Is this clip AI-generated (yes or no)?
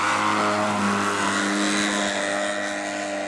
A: no